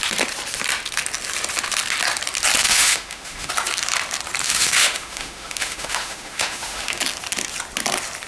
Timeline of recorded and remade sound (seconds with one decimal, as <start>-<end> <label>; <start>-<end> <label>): 0.0-2.6 recorded; 2.6-3.5 remade; 3.5-4.4 recorded; 4.4-7.0 remade; 7.0-8.3 recorded